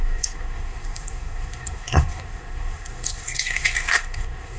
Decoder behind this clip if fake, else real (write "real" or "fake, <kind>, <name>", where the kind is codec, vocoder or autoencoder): fake, codec, SNAC